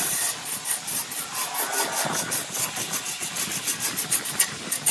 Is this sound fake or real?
real